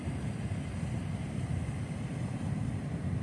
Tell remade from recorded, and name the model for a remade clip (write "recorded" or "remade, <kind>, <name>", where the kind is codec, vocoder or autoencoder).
recorded